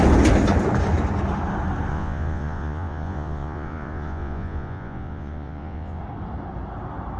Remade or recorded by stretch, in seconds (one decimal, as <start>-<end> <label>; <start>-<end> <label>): 0.0-1.9 recorded; 1.9-6.0 remade; 6.0-7.2 recorded